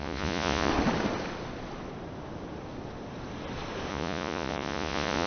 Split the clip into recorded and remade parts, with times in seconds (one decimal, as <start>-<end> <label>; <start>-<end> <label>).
0.0-0.7 remade; 0.7-3.9 recorded; 3.9-5.3 remade